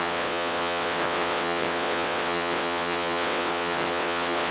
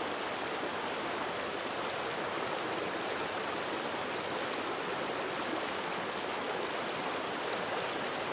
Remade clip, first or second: first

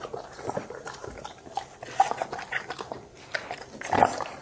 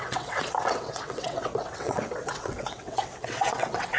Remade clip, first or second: second